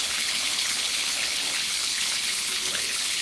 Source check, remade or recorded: remade